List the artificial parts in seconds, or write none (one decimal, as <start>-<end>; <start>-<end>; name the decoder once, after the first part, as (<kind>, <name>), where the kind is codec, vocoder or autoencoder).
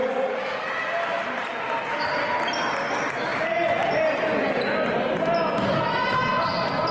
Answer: none